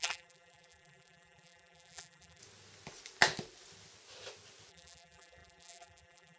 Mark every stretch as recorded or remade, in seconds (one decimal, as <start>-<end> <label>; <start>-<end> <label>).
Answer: 0.0-2.4 remade; 2.4-4.7 recorded; 4.7-6.4 remade